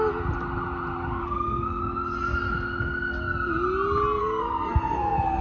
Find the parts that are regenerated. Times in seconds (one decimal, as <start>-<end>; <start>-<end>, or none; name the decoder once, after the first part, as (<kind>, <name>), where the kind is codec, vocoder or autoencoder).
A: 1.2-1.8 (codec, SNAC); 4.2-5.4